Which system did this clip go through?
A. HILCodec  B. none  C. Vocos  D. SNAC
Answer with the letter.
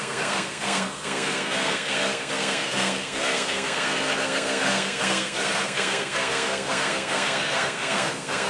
D